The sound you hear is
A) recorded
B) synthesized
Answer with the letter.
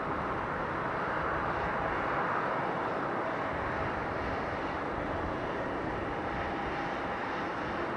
A